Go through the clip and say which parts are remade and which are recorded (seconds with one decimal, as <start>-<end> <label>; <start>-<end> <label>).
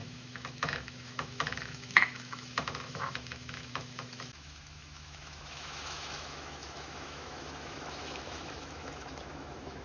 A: 0.0-9.8 remade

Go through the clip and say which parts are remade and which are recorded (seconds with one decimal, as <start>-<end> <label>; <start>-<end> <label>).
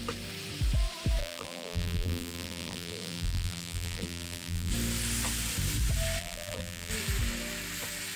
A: 0.0-1.2 recorded; 1.2-4.7 remade; 4.7-6.2 recorded; 6.2-6.9 remade; 6.9-8.2 recorded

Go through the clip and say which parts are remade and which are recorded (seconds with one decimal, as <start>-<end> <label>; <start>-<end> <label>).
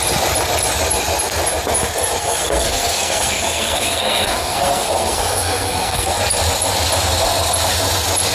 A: 0.0-2.2 recorded; 2.2-6.2 remade; 6.2-8.3 recorded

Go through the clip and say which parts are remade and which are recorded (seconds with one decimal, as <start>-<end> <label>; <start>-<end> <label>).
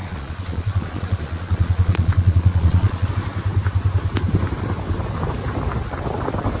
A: 0.0-3.1 remade; 3.1-6.6 recorded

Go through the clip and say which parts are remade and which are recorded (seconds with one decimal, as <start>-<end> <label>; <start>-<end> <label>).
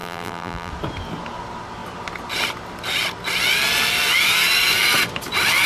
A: 0.0-0.7 remade; 0.7-5.7 recorded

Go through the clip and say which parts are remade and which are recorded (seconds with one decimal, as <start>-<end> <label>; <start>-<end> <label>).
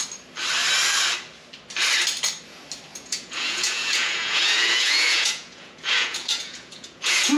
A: 0.0-2.9 recorded; 2.9-7.4 remade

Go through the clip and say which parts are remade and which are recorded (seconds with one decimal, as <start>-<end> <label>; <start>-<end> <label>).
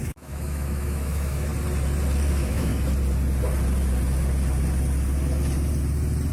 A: 0.0-1.5 remade; 1.5-2.3 recorded; 2.3-2.7 remade; 2.7-6.3 recorded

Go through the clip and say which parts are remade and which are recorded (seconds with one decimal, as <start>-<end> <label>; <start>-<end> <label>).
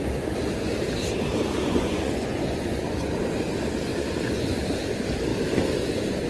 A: 0.0-1.6 recorded; 1.6-3.1 remade; 3.1-3.9 recorded; 3.9-4.6 remade; 4.6-6.3 recorded